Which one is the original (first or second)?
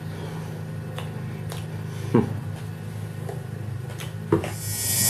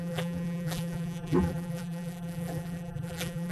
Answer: first